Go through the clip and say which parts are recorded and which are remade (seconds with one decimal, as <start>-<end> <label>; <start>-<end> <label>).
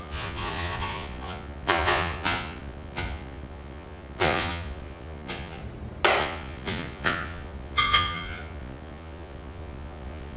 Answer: 0.0-5.6 remade; 5.6-6.2 recorded; 6.2-10.4 remade